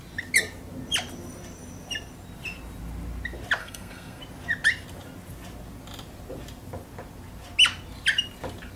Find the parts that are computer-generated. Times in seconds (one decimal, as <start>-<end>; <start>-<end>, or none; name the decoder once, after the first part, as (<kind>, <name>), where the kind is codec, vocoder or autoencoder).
3.6-4.2 (codec, SNAC)